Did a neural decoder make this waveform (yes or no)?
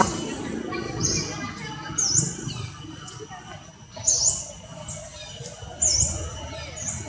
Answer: no